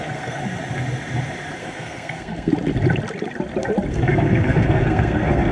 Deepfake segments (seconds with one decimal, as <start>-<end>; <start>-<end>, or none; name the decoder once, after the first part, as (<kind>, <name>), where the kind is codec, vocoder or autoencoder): 0.0-0.4 (codec, SNAC); 1.6-2.5; 3.9-5.5